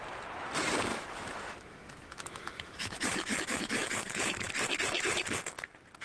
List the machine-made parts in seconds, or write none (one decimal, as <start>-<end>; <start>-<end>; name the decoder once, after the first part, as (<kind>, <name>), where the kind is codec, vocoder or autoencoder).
0.9-4.5 (autoencoder, DAC-VAE)